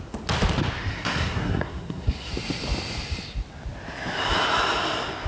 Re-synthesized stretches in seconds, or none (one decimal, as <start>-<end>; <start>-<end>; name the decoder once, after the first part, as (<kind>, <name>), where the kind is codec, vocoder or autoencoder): 0.9-2.3 (codec, SNAC)